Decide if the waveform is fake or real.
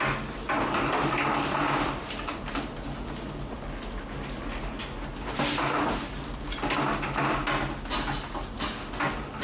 real